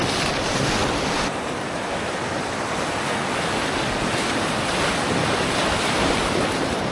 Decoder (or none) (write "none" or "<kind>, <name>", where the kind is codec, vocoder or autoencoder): none